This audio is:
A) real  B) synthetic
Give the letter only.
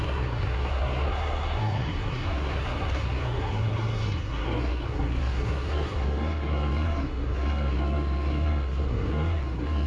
B